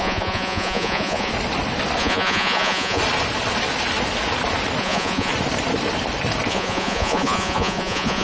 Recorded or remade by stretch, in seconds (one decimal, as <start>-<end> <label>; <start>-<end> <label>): 0.0-1.3 remade; 1.3-2.0 recorded; 2.0-3.0 remade; 3.0-4.8 recorded; 4.8-5.3 remade; 5.3-6.5 recorded; 6.5-8.2 remade